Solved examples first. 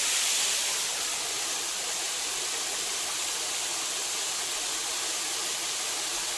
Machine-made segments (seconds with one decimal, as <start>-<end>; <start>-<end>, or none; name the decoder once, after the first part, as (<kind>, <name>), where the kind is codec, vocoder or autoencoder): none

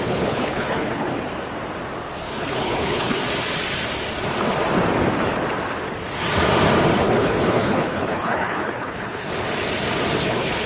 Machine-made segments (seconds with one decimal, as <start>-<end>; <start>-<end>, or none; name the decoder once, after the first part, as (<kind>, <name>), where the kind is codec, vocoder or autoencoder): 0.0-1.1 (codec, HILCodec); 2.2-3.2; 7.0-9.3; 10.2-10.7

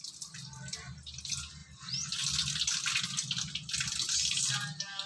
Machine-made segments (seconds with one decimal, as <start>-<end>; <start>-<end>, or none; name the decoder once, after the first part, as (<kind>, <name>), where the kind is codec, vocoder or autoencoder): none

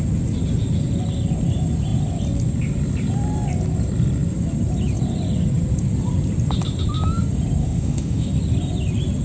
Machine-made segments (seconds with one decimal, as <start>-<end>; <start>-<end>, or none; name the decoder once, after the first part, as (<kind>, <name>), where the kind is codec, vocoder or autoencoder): 7.6-8.3 (autoencoder, DAC-VAE)

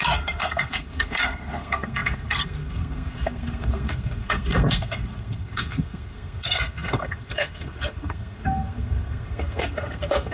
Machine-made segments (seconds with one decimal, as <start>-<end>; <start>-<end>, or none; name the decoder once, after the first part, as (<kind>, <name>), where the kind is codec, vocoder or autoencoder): 0.0-10.3 (codec, SNAC)